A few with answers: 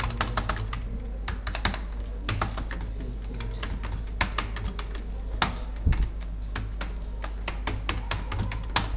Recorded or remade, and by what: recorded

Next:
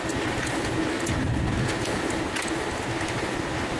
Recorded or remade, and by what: recorded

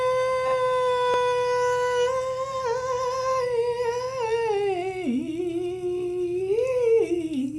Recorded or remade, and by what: recorded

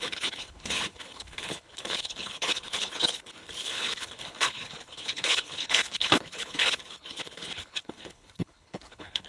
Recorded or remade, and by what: remade, codec, HILCodec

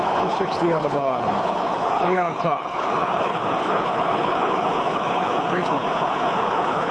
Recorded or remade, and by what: remade, codec, HILCodec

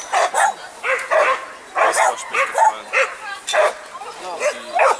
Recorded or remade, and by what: recorded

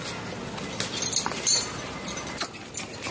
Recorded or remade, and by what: recorded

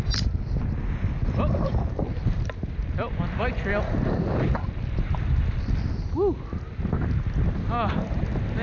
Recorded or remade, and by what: recorded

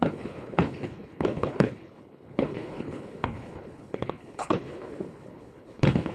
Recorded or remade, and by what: remade, codec, HILCodec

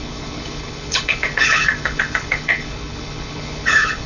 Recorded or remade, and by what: remade, codec, HILCodec